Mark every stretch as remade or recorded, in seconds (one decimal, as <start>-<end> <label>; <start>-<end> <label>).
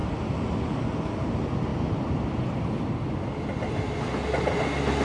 0.0-5.0 recorded